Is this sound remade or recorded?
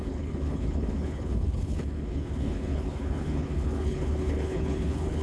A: remade